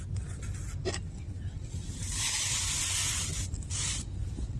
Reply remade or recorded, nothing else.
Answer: recorded